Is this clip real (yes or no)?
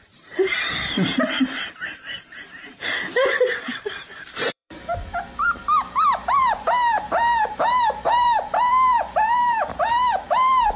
no